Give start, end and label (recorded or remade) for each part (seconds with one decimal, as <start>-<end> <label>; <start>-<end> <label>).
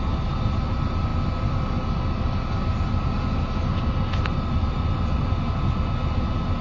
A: 0.0-6.6 recorded